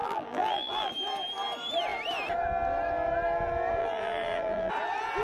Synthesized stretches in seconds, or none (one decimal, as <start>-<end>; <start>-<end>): 0.0-0.9; 3.8-4.7

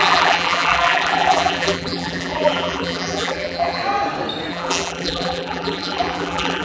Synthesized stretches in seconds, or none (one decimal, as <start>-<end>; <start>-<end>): 0.0-3.8; 4.5-6.6